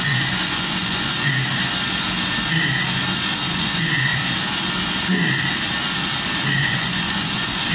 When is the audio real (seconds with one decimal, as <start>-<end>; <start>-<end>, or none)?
1.5-3.5; 4.2-6.6